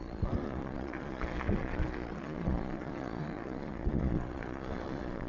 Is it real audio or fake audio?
fake